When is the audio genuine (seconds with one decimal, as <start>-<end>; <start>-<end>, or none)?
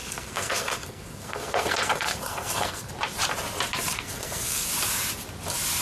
2.9-3.9; 4.7-5.8